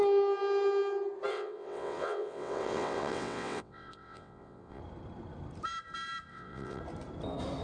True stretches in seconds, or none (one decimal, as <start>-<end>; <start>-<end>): 0.0-1.3; 4.8-6.3; 6.8-7.6

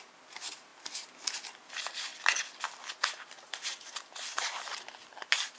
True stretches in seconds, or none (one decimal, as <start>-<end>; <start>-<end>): 0.0-5.6

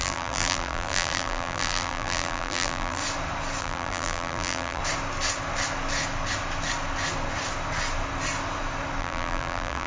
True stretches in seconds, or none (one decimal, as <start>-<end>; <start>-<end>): 3.0-3.6; 4.8-9.0

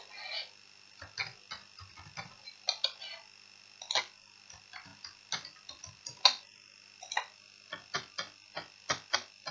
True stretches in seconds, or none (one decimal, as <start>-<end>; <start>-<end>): 0.0-9.5

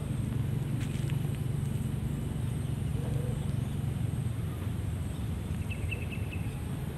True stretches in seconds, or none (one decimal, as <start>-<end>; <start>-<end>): 0.0-2.9; 6.3-7.0

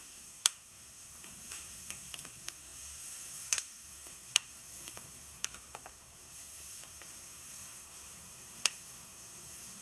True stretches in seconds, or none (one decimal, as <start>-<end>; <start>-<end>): none

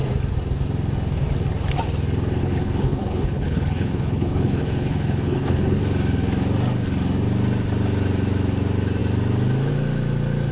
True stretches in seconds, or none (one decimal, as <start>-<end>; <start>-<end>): 0.0-2.4; 5.8-10.5

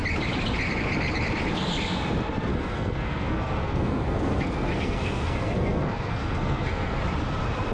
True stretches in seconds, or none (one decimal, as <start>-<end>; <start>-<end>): 0.0-2.5; 7.0-7.7